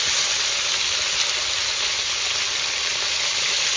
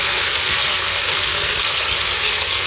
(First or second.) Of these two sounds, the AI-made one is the second